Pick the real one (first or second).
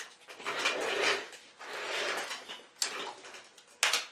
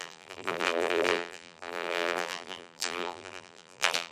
first